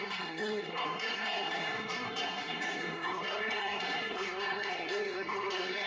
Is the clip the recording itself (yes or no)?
no